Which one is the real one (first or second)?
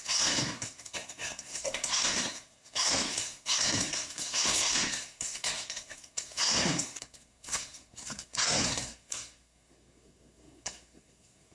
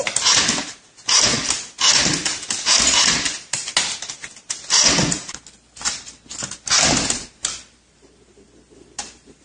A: second